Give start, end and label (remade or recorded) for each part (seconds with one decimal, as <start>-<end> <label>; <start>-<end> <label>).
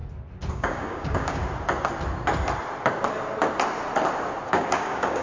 0.0-0.5 recorded; 0.5-1.4 remade; 1.4-4.5 recorded; 4.5-5.2 remade